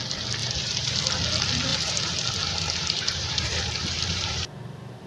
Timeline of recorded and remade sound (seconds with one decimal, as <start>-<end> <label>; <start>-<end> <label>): 0.0-0.4 recorded; 0.4-1.0 remade; 1.0-1.7 recorded; 1.7-5.1 remade